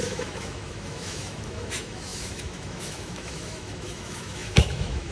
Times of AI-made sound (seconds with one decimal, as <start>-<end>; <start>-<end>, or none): 0.0-5.1